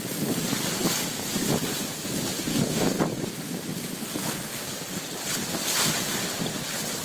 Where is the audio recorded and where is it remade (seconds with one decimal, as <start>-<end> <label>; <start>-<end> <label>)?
0.0-2.5 recorded; 2.5-3.0 remade; 3.0-7.0 recorded